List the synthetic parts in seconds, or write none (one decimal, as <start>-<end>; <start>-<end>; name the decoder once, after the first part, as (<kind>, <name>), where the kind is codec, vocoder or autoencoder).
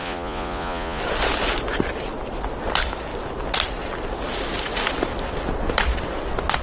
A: 0.0-1.0 (vocoder, Vocos)